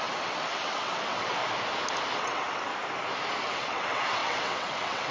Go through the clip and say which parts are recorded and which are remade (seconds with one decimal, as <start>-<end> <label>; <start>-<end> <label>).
0.0-1.4 remade; 1.4-2.2 recorded; 2.2-2.7 remade; 2.7-3.4 recorded; 3.4-5.1 remade